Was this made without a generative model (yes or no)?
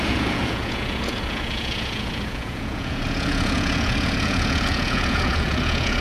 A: no